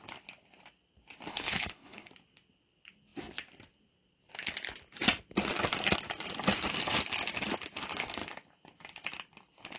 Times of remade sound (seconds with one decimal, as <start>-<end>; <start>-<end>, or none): 1.3-2.1